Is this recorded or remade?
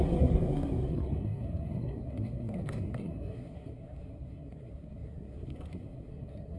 remade